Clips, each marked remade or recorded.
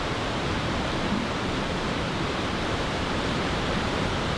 remade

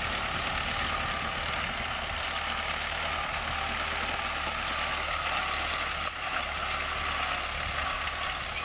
recorded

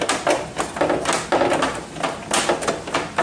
recorded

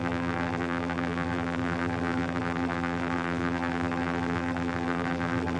remade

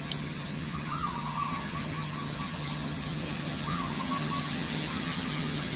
remade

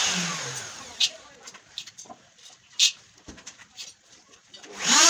remade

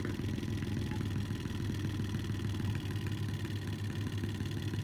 recorded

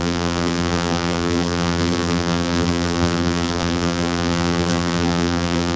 remade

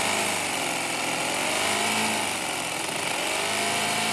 recorded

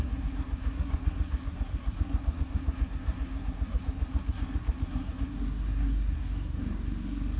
remade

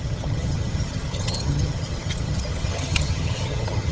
remade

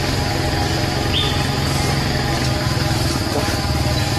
recorded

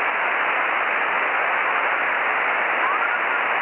recorded